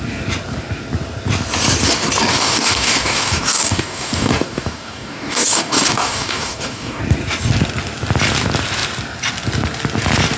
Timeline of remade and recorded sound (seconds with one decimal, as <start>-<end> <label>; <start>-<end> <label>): 0.0-2.3 recorded; 2.3-7.0 remade; 7.0-10.4 recorded

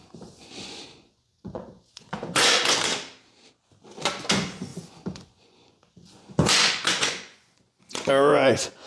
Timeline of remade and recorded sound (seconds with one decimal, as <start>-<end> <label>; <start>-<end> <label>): 0.0-2.9 remade; 2.9-4.3 recorded; 4.3-8.9 remade

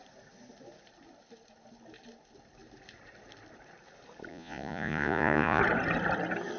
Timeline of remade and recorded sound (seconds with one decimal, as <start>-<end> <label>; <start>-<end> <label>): 0.0-4.3 recorded; 4.3-5.6 remade; 5.6-6.6 recorded

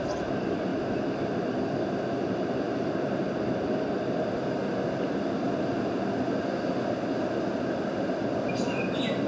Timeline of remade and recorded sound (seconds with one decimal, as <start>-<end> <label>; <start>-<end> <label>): 0.0-9.3 recorded

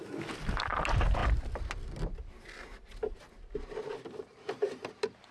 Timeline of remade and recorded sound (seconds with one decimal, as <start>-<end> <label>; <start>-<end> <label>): 0.0-5.3 recorded

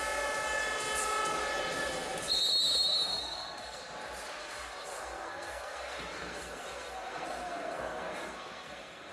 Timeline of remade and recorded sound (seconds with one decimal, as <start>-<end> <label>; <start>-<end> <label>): 0.0-3.1 recorded; 3.1-3.8 remade; 3.8-4.4 recorded; 4.4-9.1 remade

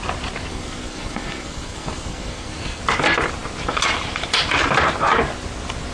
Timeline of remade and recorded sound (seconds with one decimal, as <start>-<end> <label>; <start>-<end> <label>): 0.0-0.5 recorded; 0.5-2.8 remade; 2.8-5.9 recorded